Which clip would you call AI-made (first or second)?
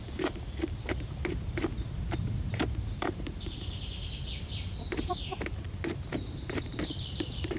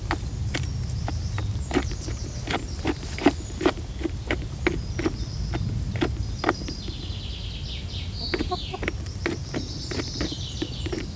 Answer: first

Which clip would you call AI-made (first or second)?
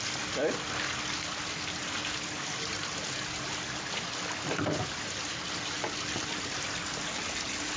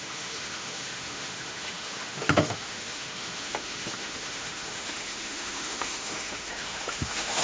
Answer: second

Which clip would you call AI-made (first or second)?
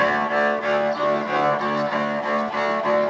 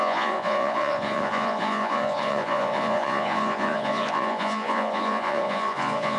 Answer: second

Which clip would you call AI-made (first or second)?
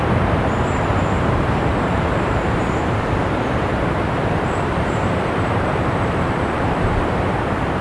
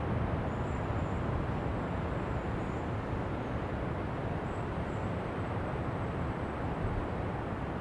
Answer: first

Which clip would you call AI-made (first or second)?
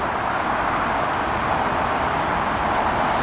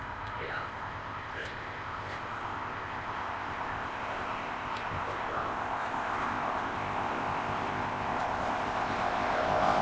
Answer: second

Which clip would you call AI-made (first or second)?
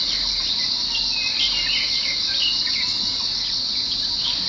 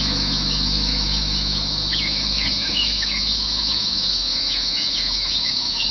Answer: second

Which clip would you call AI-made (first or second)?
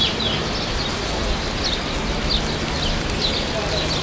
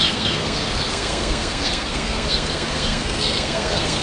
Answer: second